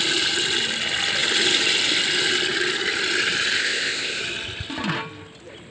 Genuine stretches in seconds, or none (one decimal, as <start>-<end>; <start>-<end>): 0.0-3.6; 4.2-5.7